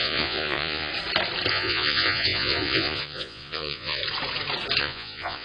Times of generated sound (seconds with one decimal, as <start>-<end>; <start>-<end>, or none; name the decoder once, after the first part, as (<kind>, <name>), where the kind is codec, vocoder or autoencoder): 0.0-0.9 (vocoder, Vocos); 1.5-4.0; 4.8-5.4